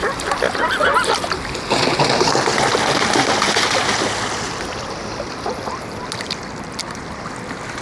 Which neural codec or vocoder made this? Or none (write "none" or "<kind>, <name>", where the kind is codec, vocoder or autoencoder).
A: none